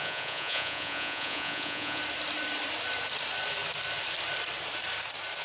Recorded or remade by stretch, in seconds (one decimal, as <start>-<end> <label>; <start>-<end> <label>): 0.0-2.0 remade; 2.0-5.4 recorded